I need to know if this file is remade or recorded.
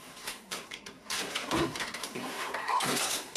remade